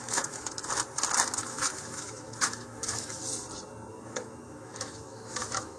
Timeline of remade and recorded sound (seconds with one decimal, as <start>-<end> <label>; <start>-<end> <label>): 0.0-0.6 remade; 0.6-1.5 recorded; 1.5-3.2 remade; 3.2-3.9 recorded; 3.9-5.8 remade